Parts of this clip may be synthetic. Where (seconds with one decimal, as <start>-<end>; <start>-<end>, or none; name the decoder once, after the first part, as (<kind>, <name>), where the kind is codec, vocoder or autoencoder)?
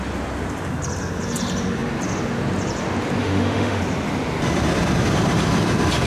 3.2-3.8 (autoencoder, DAC-VAE)